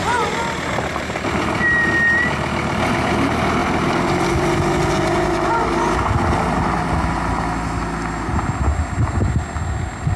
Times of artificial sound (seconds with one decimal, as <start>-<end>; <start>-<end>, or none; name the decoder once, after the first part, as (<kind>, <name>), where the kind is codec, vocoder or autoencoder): none